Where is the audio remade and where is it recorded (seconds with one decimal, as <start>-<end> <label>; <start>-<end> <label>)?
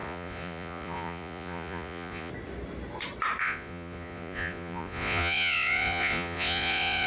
0.0-2.3 remade; 2.3-3.4 recorded; 3.4-7.1 remade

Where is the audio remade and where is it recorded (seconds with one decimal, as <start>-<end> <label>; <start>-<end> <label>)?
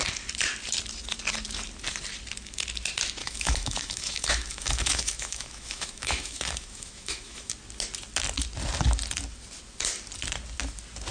0.0-3.2 recorded; 3.2-7.5 remade; 7.5-11.1 recorded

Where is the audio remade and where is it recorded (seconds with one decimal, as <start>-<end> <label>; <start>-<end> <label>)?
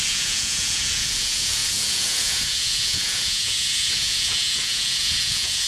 0.0-5.7 remade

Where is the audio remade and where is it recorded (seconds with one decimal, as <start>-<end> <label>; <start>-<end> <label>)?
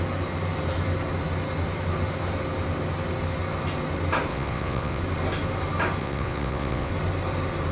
0.0-4.3 recorded; 4.3-5.0 remade; 5.0-6.0 recorded; 6.0-6.9 remade; 6.9-7.7 recorded